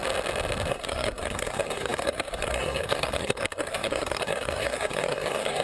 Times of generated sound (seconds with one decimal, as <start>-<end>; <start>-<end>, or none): 0.7-5.6